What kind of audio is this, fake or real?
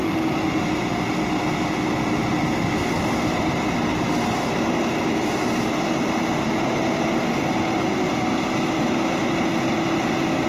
real